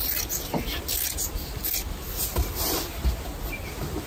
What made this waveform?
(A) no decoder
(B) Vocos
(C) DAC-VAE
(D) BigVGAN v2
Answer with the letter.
A